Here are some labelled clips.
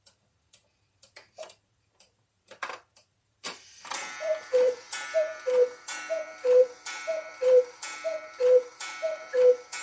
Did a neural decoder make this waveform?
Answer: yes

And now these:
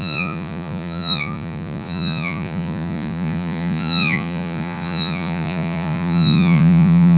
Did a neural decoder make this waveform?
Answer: yes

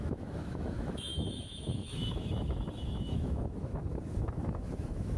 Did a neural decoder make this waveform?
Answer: yes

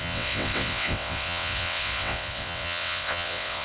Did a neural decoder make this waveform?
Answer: yes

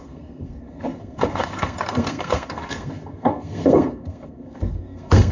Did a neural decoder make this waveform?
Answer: yes